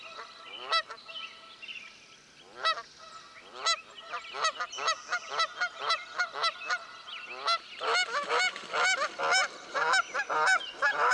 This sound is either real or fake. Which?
real